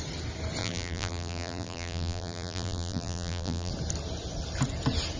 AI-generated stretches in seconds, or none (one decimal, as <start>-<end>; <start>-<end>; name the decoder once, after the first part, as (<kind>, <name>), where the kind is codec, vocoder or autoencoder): 0.6-3.7 (vocoder, BigVGAN v2)